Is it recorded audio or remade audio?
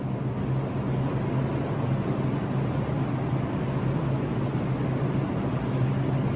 recorded